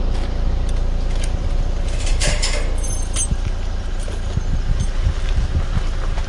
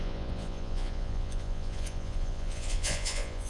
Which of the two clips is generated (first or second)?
second